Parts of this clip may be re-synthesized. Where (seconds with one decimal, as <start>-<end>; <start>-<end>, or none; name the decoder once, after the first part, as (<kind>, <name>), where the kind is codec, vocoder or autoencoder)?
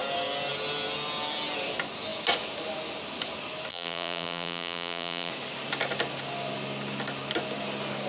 3.7-5.3 (vocoder, BigVGAN v2)